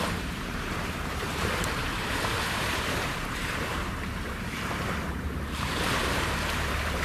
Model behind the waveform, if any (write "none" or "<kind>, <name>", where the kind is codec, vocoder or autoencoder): vocoder, BigVGAN v2